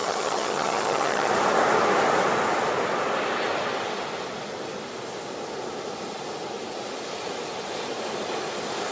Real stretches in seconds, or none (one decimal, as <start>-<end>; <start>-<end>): 1.3-8.9